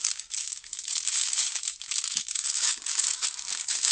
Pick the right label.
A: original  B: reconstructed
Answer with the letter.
B